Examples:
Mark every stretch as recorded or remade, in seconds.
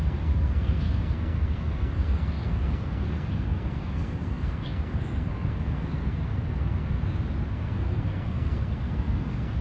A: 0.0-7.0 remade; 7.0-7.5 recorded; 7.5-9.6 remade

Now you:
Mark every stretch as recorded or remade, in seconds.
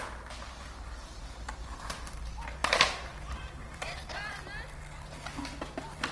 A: 0.0-2.6 recorded; 2.6-4.1 remade; 4.1-6.1 recorded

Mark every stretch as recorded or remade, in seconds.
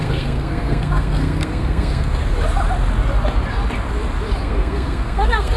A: 0.0-2.2 remade; 2.2-4.4 recorded; 4.4-5.6 remade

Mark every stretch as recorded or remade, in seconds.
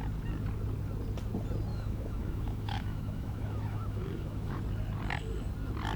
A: 0.0-1.7 recorded; 1.7-4.6 remade; 4.6-6.0 recorded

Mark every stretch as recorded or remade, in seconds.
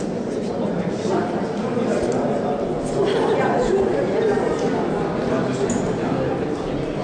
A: 0.0-7.0 recorded